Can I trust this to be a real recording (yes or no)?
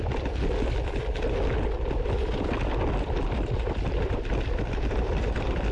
no